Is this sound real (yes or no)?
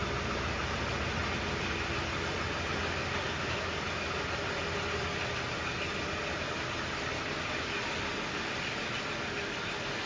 yes